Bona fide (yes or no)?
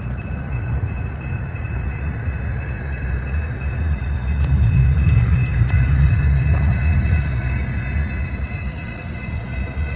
no